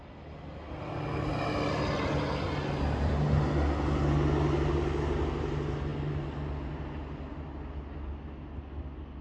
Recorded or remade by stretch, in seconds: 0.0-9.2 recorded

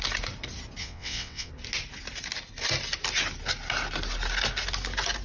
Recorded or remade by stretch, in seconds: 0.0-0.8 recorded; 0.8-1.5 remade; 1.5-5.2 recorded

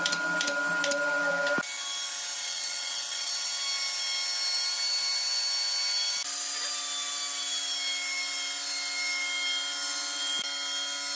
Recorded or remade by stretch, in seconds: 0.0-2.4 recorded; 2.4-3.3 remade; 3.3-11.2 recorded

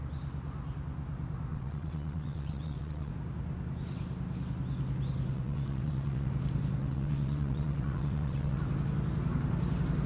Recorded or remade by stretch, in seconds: 0.0-1.5 recorded; 1.5-3.1 remade; 3.1-5.3 recorded; 5.3-6.3 remade; 6.3-6.8 recorded; 6.8-8.6 remade; 8.6-10.1 recorded

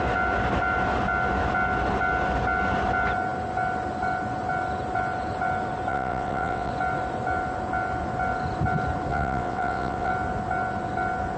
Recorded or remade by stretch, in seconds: 0.0-5.9 recorded; 5.9-6.7 remade; 6.7-9.1 recorded; 9.1-10.1 remade; 10.1-11.4 recorded

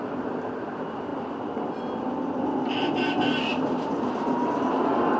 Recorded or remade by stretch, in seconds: 0.0-5.2 recorded

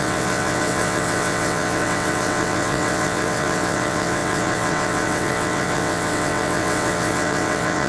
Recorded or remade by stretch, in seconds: 0.0-7.9 remade